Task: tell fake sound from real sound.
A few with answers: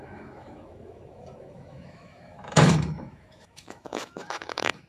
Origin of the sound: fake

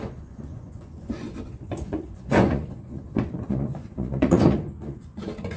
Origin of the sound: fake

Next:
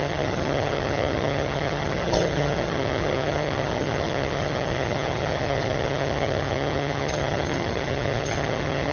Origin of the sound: fake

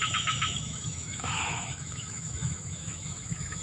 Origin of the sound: fake